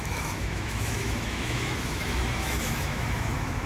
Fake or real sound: fake